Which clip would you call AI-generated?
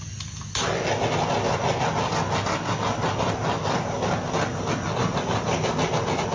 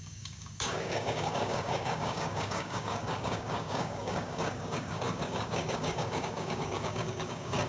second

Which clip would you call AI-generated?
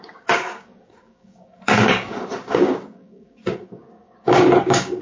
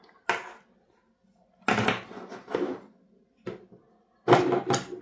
first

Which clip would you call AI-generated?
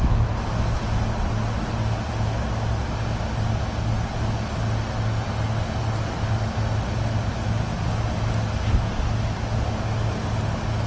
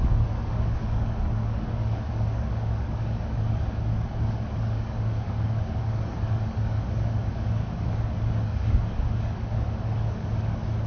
second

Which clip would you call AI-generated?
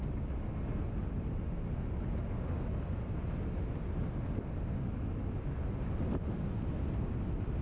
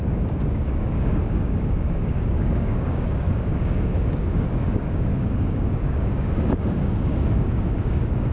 second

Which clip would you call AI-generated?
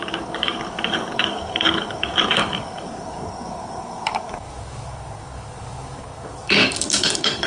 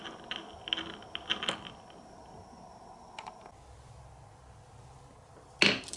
first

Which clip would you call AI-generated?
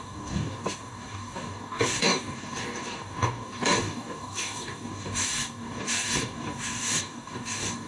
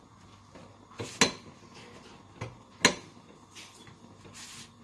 first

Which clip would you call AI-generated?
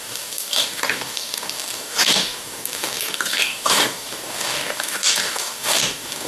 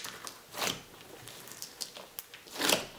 first